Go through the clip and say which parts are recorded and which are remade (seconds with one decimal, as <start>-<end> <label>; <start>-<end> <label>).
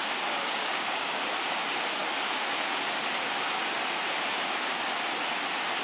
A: 0.0-0.4 recorded; 0.4-1.2 remade; 1.2-5.8 recorded